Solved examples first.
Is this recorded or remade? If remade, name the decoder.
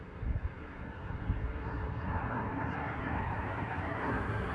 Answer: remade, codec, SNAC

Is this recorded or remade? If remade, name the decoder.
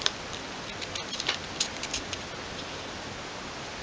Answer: recorded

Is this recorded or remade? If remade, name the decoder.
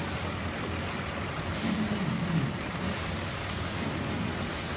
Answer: recorded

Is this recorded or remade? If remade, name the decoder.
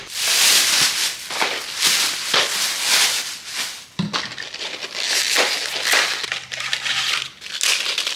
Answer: recorded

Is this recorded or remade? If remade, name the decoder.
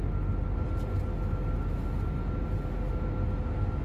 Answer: recorded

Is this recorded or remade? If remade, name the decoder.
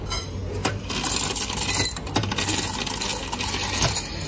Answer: recorded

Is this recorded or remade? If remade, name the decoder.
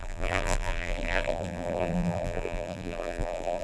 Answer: remade, vocoder, BigVGAN v2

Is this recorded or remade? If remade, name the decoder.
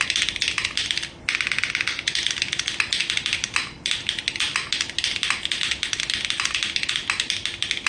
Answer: recorded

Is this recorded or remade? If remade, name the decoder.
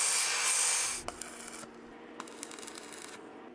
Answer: recorded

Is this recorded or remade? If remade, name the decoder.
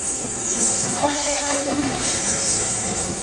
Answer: remade, codec, SNAC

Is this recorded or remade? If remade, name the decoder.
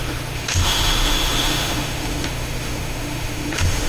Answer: remade, autoencoder, DAC-VAE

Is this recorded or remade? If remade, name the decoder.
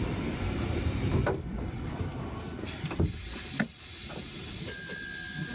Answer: remade, vocoder, BigVGAN v2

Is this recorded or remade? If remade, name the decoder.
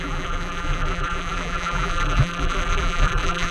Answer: remade, vocoder, BigVGAN v2